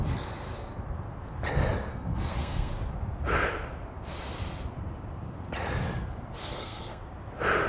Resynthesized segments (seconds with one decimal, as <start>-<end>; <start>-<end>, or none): 1.9-2.7; 6.5-7.0